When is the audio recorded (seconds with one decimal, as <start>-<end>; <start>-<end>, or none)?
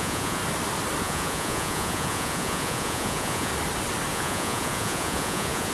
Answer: 0.4-1.0; 3.5-4.1